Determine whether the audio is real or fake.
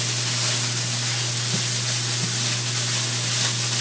real